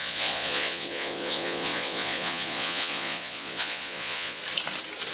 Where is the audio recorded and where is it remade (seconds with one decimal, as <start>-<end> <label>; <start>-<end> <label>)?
0.0-4.4 remade; 4.4-5.1 recorded